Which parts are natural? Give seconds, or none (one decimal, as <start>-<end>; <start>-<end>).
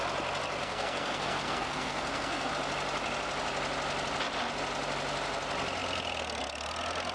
0.0-0.6; 2.5-7.1